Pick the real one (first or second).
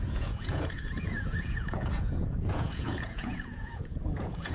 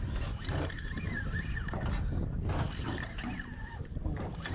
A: second